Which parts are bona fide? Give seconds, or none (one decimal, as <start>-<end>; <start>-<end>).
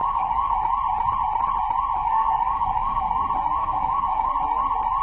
0.6-2.0; 3.1-3.6; 4.3-5.0